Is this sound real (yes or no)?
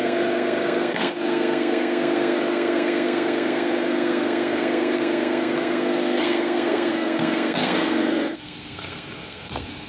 no